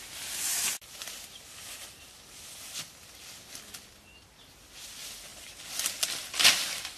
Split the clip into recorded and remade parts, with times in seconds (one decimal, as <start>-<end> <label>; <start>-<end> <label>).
0.0-7.0 recorded